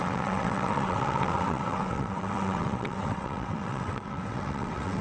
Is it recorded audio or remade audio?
remade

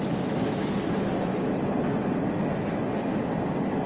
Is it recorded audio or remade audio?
recorded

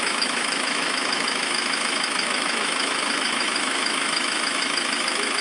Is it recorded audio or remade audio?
remade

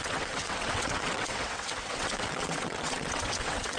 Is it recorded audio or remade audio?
remade